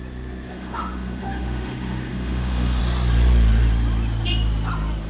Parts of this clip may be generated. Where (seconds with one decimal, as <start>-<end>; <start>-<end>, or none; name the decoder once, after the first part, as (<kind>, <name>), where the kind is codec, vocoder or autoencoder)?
0.5-2.8 (autoencoder, DAC-VAE)